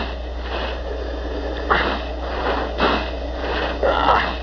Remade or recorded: recorded